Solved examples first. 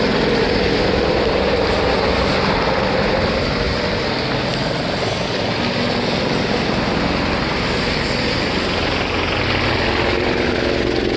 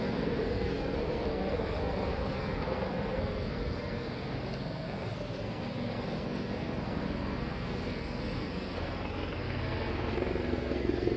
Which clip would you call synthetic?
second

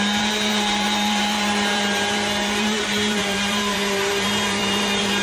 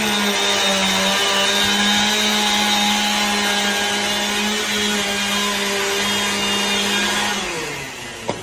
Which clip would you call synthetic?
first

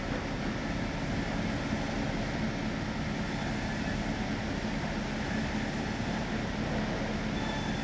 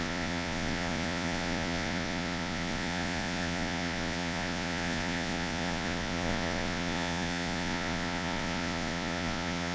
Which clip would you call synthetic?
second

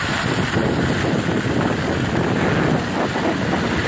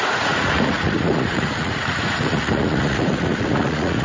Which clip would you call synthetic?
second